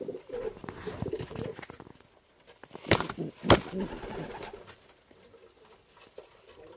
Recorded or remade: recorded